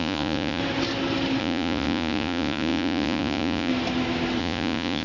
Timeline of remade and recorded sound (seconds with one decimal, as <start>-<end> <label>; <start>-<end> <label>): 0.0-0.6 remade; 0.6-1.4 recorded; 1.4-3.7 remade; 3.7-4.4 recorded; 4.4-5.0 remade